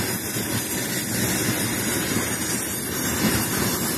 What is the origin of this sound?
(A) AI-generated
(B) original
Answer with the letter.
B